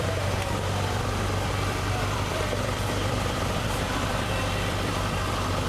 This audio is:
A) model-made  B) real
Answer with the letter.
A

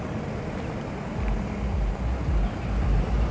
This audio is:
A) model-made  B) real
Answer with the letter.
B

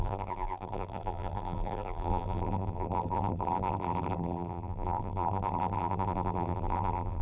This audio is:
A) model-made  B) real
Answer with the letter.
A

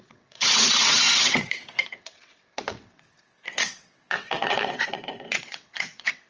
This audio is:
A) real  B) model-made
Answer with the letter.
B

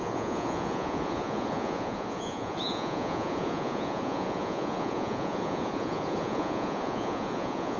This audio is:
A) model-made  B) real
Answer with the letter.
A